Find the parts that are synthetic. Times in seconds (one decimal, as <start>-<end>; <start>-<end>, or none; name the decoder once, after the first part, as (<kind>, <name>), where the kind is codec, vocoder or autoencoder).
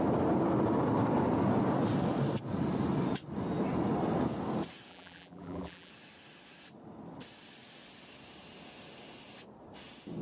4.9-5.9 (vocoder, BigVGAN v2)